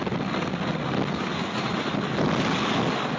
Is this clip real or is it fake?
real